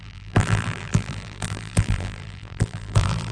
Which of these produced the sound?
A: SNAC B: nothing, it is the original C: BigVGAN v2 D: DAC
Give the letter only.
C